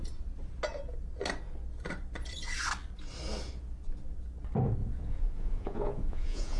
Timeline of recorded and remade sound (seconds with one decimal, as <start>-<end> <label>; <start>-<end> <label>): 0.0-4.8 recorded; 4.8-6.6 remade